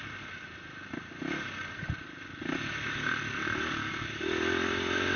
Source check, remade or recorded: recorded